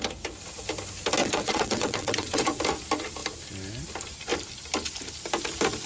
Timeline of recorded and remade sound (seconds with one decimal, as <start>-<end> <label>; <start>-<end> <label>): 0.0-1.2 recorded; 1.2-2.6 remade; 2.6-5.9 recorded